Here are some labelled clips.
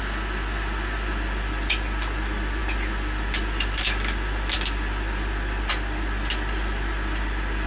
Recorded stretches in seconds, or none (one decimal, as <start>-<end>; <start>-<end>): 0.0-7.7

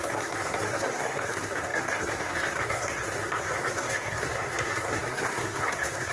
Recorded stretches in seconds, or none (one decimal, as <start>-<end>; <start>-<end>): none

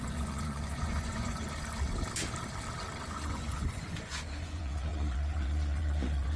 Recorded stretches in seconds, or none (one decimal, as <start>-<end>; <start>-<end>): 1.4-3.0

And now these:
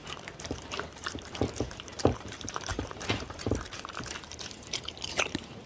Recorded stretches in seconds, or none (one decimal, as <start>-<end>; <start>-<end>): none

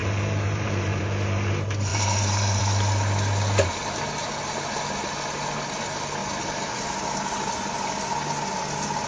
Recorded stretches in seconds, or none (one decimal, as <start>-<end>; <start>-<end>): 1.0-1.9; 2.6-4.2; 4.7-9.1

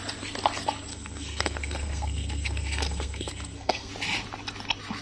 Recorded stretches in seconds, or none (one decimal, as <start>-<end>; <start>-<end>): 0.0-0.9; 3.9-5.0

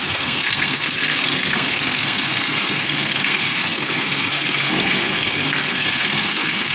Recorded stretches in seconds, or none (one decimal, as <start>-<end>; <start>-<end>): none